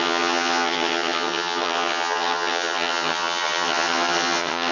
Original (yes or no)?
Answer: no